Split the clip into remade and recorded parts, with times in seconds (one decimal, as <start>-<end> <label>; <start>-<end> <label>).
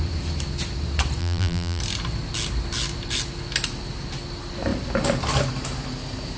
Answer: 0.0-1.2 recorded; 1.2-1.8 remade; 1.8-6.4 recorded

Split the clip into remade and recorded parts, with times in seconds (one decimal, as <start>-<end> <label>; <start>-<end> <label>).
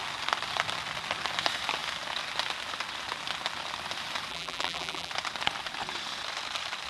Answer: 0.0-4.3 recorded; 4.3-5.1 remade; 5.1-6.9 recorded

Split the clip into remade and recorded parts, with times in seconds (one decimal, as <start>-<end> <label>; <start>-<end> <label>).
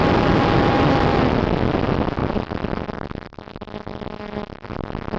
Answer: 0.0-2.2 recorded; 2.2-4.2 remade; 4.2-5.2 recorded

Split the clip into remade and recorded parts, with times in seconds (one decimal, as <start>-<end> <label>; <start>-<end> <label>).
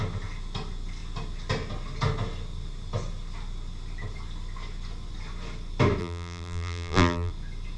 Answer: 0.0-6.0 recorded; 6.0-7.3 remade; 7.3-7.8 recorded